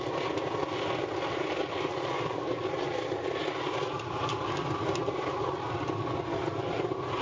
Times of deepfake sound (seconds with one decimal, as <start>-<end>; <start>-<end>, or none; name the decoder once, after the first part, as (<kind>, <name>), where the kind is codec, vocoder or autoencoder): none